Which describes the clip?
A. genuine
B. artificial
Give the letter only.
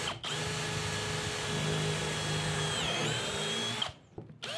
A